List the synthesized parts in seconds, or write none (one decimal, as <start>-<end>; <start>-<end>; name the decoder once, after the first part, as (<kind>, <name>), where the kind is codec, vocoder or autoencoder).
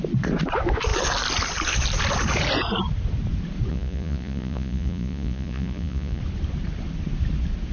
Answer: 3.7-6.2 (vocoder, Vocos)